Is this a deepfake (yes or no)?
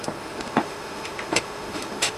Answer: yes